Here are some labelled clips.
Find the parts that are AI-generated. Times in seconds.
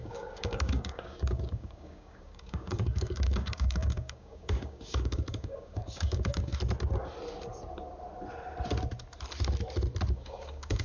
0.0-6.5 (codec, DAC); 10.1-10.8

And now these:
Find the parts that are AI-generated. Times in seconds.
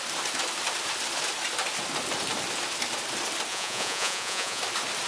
3.5-4.6 (vocoder, Vocos)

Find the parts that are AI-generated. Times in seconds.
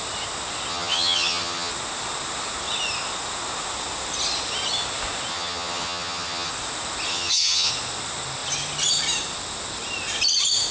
0.7-1.7 (vocoder, HiFi-GAN); 5.3-6.5; 7.1-7.7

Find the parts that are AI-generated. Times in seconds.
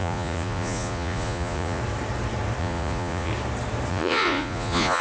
0.0-1.8 (vocoder, Vocos); 2.6-3.3; 3.9-5.0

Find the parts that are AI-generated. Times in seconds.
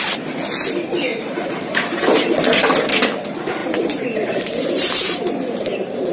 1.1-2.3 (vocoder, BigVGAN v2); 3.6-6.1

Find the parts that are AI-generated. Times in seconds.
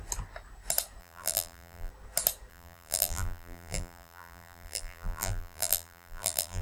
1.0-1.9 (vocoder, BigVGAN v2); 2.5-6.6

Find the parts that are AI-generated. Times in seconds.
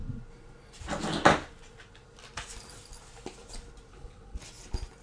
3.9-4.4 (codec, HILCodec)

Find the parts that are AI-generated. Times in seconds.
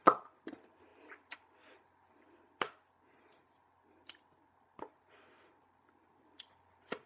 none